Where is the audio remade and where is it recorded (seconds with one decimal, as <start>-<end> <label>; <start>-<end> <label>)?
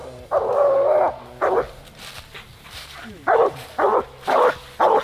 0.0-2.5 recorded; 2.5-3.5 remade; 3.5-5.0 recorded